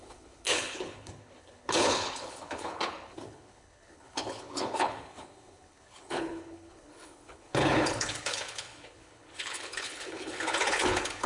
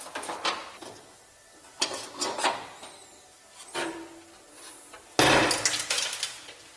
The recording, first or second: second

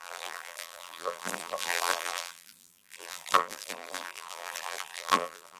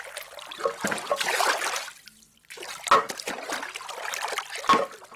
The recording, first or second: second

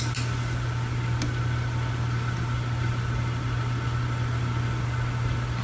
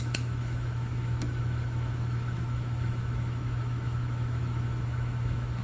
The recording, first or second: first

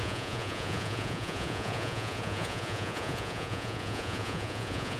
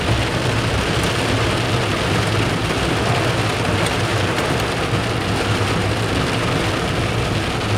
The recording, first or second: second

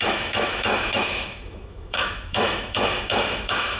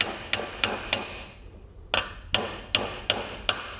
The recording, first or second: second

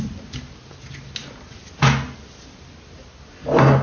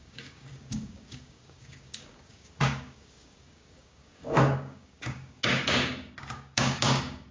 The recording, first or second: first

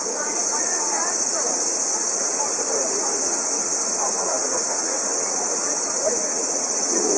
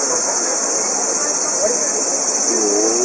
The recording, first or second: second